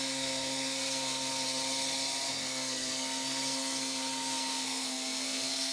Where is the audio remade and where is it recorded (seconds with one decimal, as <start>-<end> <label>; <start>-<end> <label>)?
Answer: 0.0-1.3 remade; 1.3-2.3 recorded; 2.3-5.7 remade